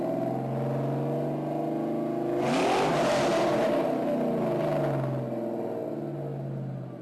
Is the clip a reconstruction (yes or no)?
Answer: no